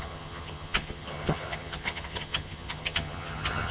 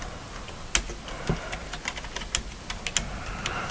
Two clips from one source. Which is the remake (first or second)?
first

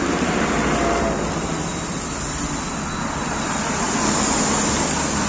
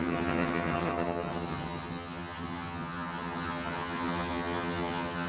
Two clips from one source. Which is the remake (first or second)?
second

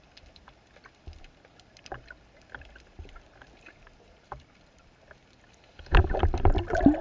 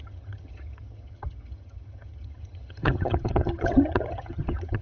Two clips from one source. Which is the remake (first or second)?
second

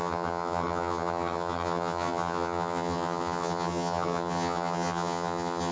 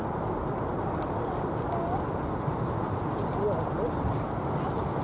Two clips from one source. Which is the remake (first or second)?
first